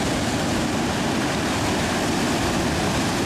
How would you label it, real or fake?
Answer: real